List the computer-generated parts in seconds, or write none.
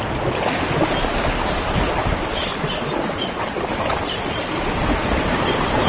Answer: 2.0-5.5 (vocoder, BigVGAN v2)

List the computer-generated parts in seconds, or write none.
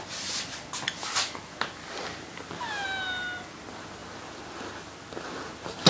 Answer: none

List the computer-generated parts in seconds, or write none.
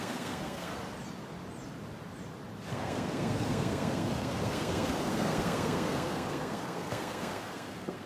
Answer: 0.0-0.7 (codec, SNAC); 2.7-8.1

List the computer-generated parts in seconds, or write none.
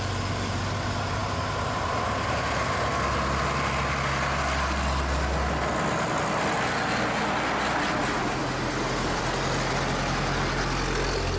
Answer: none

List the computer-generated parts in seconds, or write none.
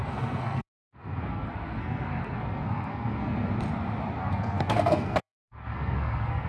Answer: 0.0-3.5 (codec, SNAC); 4.2-6.5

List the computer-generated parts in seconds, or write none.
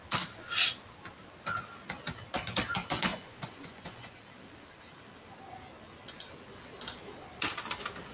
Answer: 3.1-4.2 (vocoder, Vocos)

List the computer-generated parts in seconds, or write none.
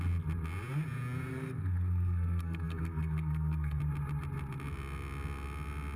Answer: 1.3-3.8 (codec, SNAC)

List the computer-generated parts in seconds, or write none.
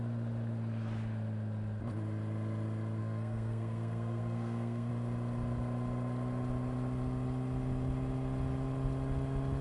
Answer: 3.0-4.9 (codec, SNAC)